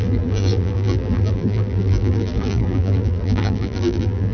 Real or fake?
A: fake